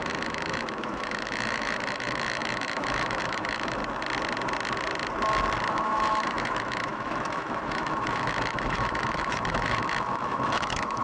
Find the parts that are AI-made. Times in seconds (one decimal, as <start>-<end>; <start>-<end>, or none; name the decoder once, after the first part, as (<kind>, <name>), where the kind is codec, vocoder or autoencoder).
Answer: 0.0-3.8 (autoencoder, DAC-VAE); 5.7-11.0